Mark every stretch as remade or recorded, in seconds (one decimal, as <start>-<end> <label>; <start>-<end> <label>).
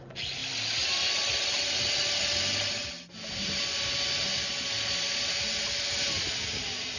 0.0-7.0 recorded